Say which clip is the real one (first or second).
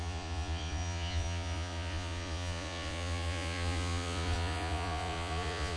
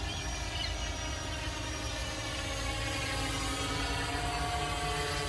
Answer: second